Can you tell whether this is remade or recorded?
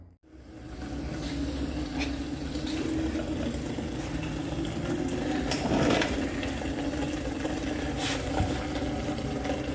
recorded